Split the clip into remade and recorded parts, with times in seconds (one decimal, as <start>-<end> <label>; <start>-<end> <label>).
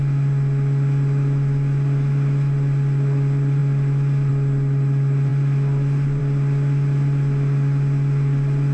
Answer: 0.0-8.7 recorded